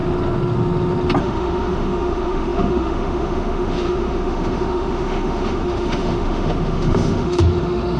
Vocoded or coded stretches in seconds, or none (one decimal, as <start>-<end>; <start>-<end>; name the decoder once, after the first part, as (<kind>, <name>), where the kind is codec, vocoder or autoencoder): 1.2-8.0 (autoencoder, DAC-VAE)